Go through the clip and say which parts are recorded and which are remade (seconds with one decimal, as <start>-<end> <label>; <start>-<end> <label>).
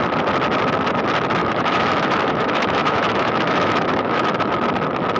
0.0-1.4 recorded; 1.4-4.5 remade; 4.5-5.2 recorded